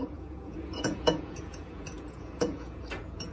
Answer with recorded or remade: remade